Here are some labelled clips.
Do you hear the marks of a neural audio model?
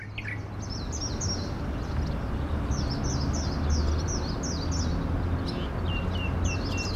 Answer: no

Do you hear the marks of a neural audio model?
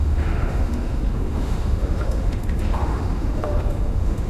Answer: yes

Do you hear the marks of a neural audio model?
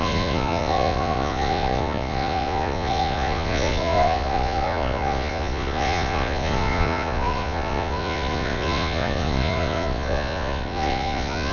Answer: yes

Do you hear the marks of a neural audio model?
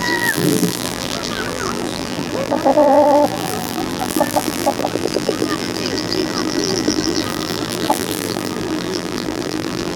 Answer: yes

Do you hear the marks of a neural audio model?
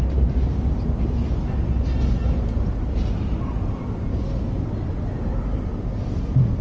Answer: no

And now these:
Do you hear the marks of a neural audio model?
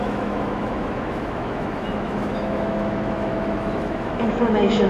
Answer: yes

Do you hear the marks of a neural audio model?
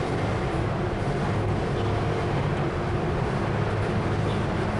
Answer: no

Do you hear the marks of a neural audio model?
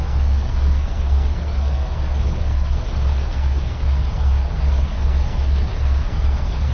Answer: yes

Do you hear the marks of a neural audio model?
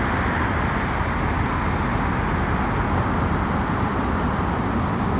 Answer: no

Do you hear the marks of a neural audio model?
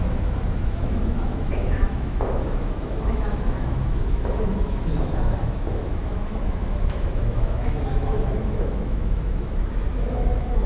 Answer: yes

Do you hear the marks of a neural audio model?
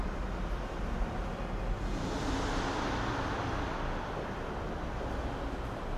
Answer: no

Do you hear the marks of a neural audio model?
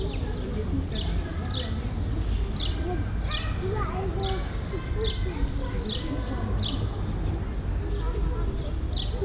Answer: no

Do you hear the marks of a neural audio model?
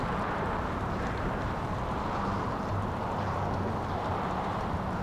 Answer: yes